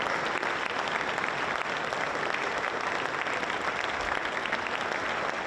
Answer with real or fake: real